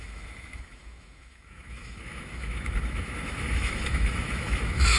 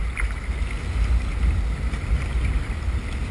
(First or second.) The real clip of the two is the second